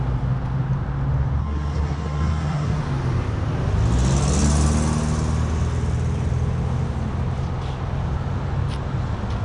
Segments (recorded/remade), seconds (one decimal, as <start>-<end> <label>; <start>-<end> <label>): 0.0-1.4 recorded; 1.4-2.8 remade; 2.8-9.4 recorded